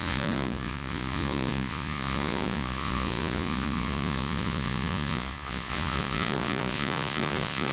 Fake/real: fake